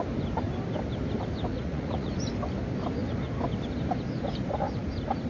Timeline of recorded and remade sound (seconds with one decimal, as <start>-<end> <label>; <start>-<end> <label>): 0.0-1.5 recorded; 1.5-2.1 remade; 2.1-5.3 recorded